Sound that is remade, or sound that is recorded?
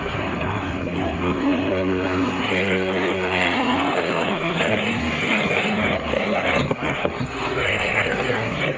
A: remade